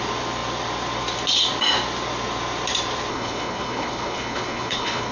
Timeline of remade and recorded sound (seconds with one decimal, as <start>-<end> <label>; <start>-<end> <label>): 0.0-3.1 recorded; 3.1-5.1 remade